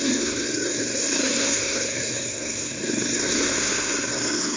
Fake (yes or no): yes